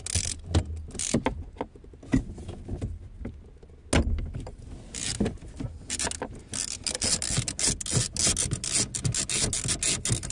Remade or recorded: recorded